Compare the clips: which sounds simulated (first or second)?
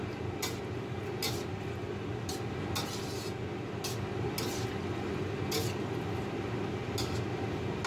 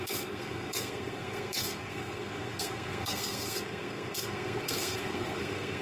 second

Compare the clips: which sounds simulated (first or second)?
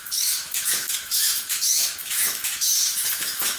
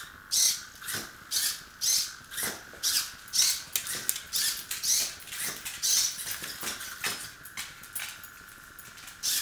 first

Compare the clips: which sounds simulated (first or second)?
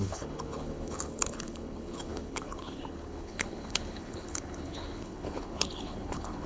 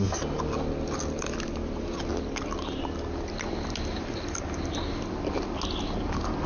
first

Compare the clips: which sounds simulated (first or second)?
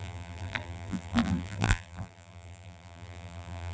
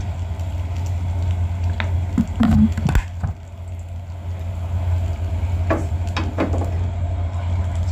first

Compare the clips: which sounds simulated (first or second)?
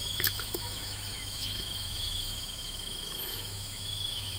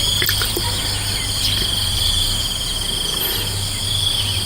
first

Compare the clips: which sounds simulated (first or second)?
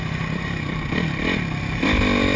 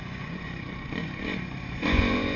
second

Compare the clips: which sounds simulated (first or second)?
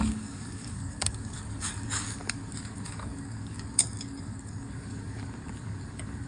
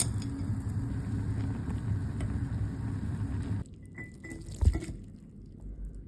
first